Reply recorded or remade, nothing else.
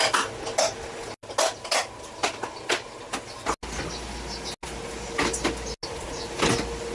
recorded